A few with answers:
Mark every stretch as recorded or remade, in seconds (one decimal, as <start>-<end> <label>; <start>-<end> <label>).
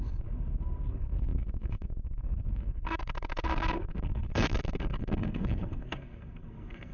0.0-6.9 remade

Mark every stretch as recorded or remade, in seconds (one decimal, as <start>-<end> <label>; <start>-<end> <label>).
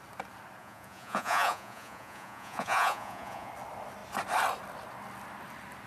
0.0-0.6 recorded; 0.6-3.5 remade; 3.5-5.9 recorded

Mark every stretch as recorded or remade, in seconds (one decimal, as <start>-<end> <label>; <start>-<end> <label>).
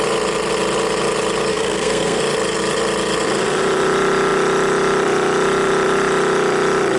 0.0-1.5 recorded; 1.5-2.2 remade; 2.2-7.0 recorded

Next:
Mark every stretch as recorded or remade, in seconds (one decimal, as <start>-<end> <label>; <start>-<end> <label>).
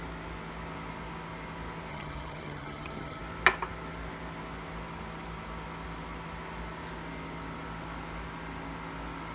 0.0-1.9 recorded; 1.9-3.2 remade; 3.2-9.3 recorded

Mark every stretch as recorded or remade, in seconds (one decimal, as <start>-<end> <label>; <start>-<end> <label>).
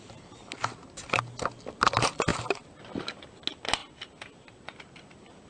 0.0-5.5 recorded